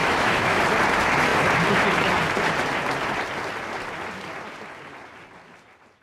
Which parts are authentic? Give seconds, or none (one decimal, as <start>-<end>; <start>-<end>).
0.6-6.0